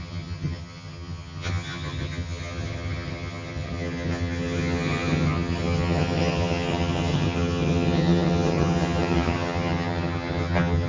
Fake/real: fake